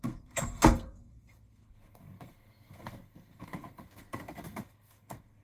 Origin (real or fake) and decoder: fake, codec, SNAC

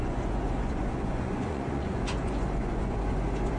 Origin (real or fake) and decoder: fake, vocoder, Vocos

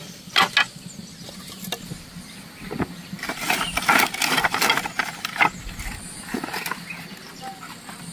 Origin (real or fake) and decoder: real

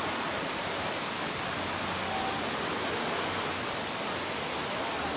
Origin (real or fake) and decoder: real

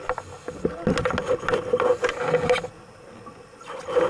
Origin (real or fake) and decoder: real